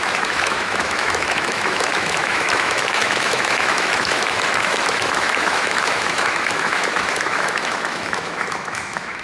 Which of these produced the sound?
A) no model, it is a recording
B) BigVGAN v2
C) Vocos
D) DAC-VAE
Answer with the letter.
D